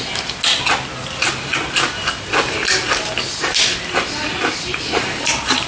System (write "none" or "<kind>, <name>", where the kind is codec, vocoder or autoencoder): none